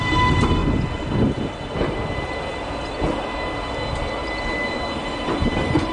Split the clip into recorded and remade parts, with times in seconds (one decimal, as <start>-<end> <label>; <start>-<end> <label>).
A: 0.0-5.9 recorded